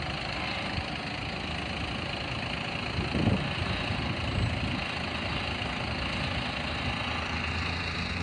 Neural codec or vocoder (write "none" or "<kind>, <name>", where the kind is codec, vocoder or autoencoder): none